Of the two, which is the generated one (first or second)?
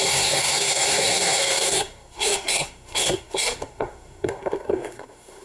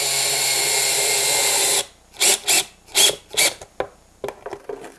first